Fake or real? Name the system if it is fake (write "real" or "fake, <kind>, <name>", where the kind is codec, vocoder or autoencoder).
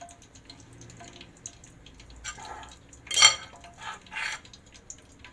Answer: real